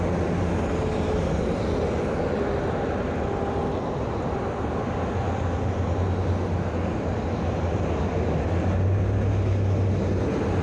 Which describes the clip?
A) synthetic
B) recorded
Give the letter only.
B